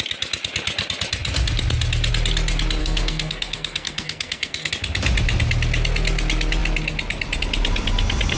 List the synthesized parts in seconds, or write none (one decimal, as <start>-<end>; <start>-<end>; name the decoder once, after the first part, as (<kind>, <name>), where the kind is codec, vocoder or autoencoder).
2.8-4.7 (codec, SNAC)